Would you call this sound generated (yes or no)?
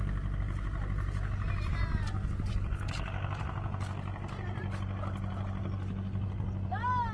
no